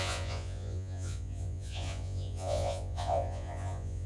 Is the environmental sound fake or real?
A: fake